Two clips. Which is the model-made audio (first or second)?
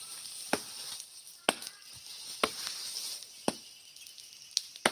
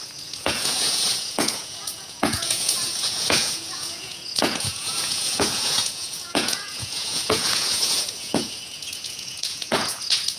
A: second